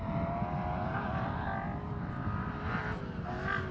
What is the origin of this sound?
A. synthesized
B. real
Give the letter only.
B